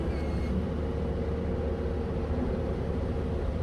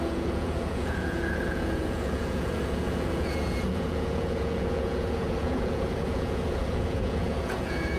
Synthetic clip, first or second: second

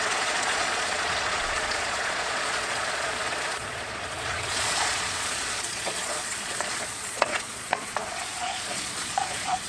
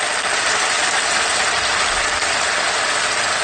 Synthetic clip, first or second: first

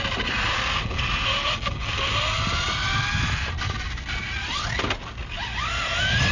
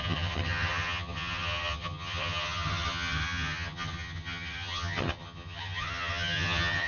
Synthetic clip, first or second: second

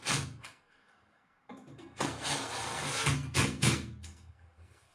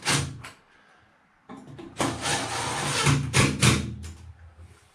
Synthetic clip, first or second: first